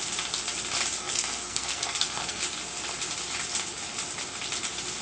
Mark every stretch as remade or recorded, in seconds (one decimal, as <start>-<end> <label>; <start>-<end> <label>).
0.0-1.0 recorded; 1.0-2.4 remade; 2.4-5.0 recorded